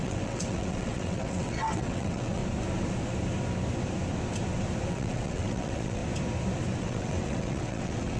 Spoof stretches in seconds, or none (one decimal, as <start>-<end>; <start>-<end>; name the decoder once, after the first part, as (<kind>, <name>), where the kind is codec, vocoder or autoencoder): 0.0-2.4 (vocoder, WaveNeXt); 4.9-6.0; 6.8-8.2